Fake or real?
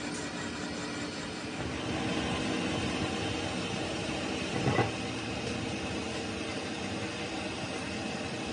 real